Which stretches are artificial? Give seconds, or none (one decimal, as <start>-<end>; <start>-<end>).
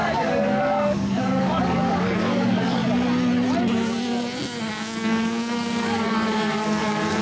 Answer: 0.0-2.8; 4.7-7.2